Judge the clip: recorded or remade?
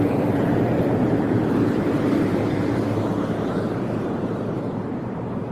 remade